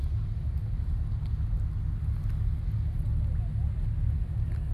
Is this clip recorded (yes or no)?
yes